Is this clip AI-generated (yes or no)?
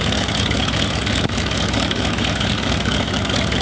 yes